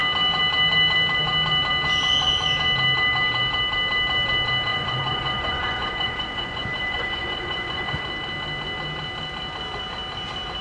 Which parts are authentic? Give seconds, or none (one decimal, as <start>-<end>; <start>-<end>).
0.0-4.7; 8.0-10.6